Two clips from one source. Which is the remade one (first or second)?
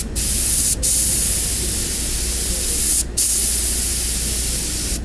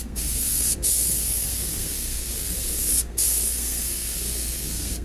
second